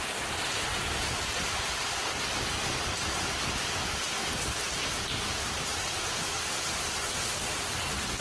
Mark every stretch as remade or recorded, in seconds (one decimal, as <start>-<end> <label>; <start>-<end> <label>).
0.0-8.2 recorded